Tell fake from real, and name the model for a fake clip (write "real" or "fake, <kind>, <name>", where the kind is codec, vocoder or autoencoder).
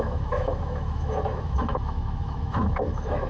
fake, autoencoder, DAC-VAE